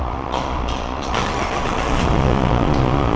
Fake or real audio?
fake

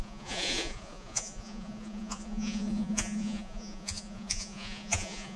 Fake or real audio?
fake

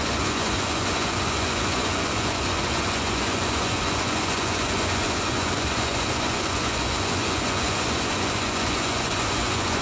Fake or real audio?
fake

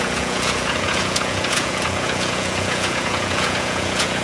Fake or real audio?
fake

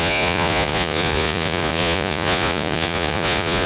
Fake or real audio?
fake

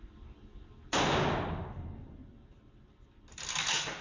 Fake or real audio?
real